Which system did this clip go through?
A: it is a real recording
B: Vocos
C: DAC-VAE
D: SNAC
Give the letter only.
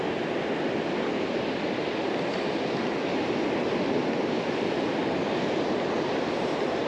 A